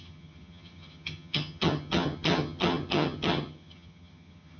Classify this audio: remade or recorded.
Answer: remade